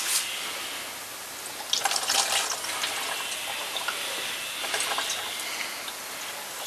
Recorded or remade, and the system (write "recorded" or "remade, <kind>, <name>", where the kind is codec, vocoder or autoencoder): recorded